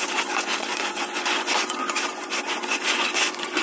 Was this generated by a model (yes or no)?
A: yes